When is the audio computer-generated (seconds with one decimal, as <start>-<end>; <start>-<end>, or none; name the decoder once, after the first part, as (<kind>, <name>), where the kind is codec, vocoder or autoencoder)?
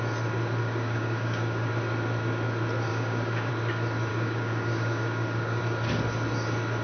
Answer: 0.6-1.7 (codec, DAC); 2.9-3.5; 4.1-5.6